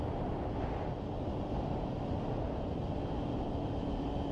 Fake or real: real